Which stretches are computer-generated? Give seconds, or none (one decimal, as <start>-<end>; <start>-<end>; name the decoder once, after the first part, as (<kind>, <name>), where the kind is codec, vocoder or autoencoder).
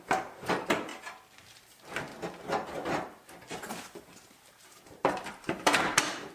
0.0-0.9 (vocoder, BigVGAN v2); 1.5-2.1; 4.0-6.3